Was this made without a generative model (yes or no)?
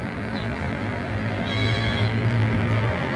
no